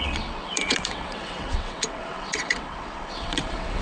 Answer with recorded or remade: remade